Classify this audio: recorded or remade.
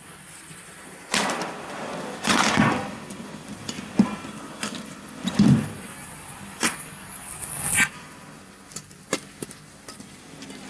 remade